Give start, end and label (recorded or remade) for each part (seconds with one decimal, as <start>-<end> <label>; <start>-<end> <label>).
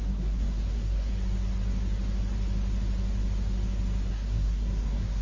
0.0-1.1 remade; 1.1-4.1 recorded; 4.1-5.2 remade